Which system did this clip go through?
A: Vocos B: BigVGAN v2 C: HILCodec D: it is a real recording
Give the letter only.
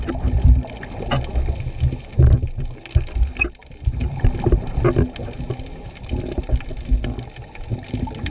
D